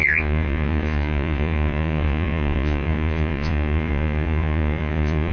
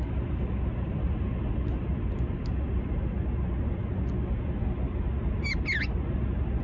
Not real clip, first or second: first